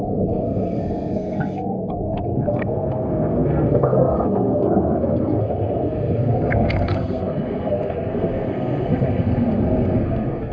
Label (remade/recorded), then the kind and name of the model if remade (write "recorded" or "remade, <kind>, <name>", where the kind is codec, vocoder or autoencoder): remade, codec, SNAC